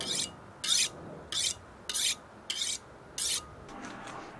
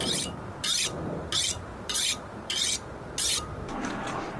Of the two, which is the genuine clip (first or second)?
first